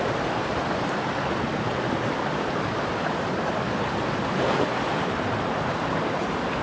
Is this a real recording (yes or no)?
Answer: no